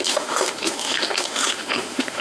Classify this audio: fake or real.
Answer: fake